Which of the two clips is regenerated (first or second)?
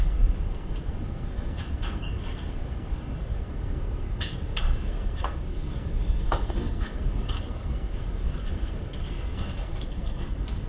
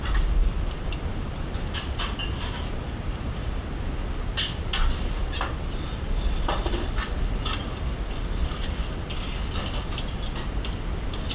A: first